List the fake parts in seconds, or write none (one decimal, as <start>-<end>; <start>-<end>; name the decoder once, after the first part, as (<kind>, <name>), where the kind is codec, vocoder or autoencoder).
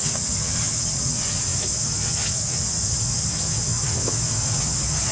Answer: 0.0-5.1 (vocoder, WaveNeXt)